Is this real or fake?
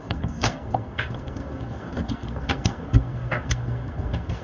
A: fake